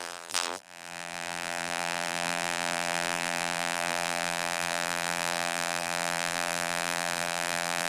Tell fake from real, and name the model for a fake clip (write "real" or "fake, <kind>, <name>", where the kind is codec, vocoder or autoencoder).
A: fake, vocoder, BigVGAN v2